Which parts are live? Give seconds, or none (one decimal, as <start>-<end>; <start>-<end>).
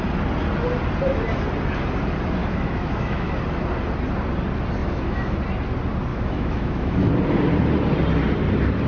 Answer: 0.0-2.4; 3.3-4.8; 5.4-6.1; 7.1-8.9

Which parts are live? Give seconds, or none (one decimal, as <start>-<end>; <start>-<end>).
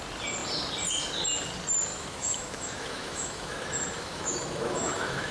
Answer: 0.0-1.9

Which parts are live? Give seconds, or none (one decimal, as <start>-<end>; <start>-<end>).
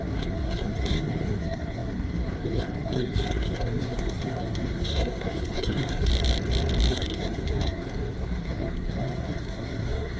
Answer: 6.1-6.9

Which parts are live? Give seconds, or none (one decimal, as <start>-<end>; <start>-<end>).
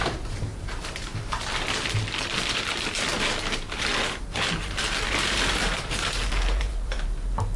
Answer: 0.0-0.5; 1.2-4.3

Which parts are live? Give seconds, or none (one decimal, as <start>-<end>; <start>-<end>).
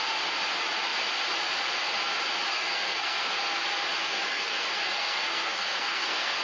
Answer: 0.0-2.5; 3.3-4.0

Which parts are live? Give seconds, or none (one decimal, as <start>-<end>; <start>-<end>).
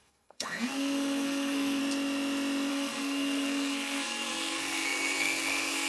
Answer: 1.8-2.7